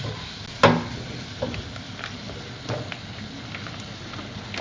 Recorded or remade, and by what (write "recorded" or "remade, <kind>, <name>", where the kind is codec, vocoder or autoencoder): recorded